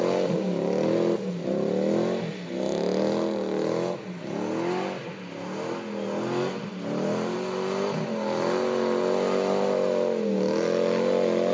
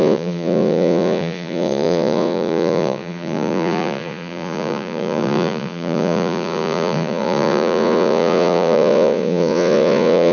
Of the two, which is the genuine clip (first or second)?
first